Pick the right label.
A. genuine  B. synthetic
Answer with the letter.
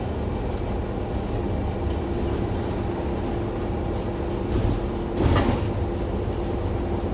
A